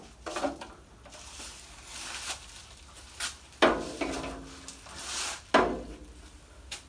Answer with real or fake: real